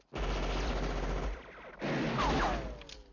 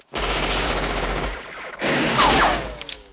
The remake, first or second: second